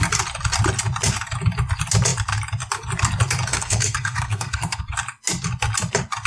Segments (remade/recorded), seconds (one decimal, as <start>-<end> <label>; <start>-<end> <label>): 0.0-3.5 recorded; 3.5-4.8 remade; 4.8-6.3 recorded